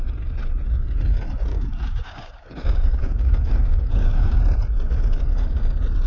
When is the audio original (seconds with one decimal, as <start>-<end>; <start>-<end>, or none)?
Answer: 0.0-1.5; 4.4-6.1